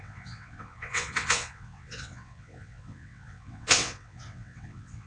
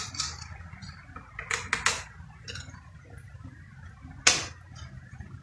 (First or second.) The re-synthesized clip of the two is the first